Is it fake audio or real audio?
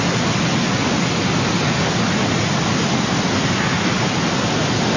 real